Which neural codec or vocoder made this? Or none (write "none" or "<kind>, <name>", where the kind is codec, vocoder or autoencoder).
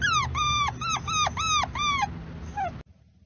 none